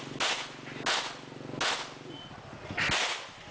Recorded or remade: recorded